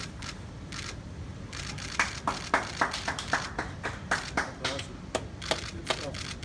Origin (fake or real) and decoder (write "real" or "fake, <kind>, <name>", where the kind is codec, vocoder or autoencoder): real